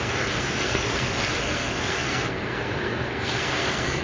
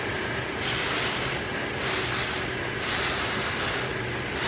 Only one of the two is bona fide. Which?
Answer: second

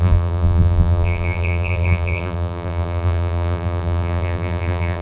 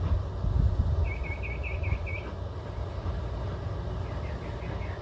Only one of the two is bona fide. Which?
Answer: second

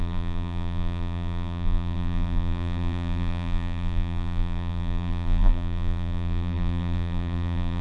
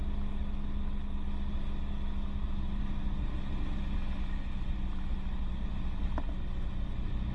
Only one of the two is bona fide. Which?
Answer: second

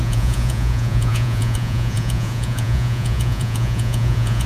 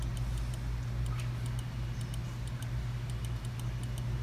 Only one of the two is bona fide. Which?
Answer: second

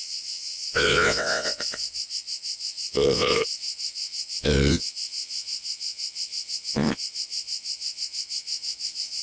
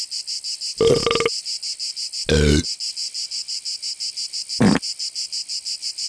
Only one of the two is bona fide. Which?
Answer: second